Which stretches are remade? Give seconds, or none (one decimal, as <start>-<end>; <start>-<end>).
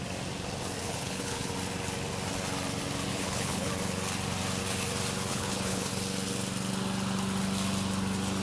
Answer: 0.8-1.5; 3.1-3.7; 5.3-5.9